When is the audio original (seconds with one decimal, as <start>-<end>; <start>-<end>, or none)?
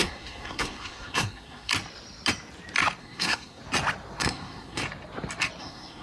1.7-3.0; 3.6-4.2; 4.8-5.6